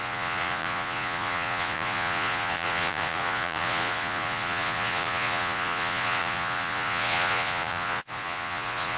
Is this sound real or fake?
fake